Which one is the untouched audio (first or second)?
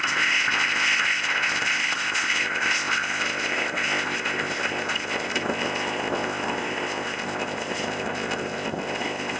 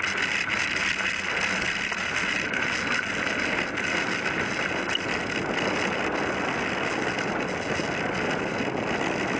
second